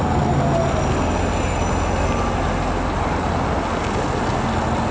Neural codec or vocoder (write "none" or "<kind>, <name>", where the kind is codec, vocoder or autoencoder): none